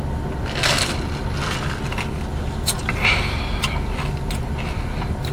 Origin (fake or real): real